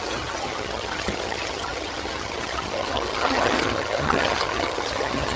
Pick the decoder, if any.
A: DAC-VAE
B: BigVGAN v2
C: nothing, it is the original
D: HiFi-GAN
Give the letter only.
D